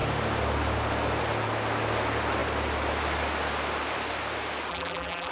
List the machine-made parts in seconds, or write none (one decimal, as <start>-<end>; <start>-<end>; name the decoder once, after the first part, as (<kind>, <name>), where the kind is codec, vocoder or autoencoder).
4.7-5.3 (vocoder, BigVGAN v2)